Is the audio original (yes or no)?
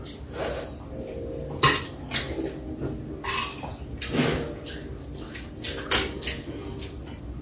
yes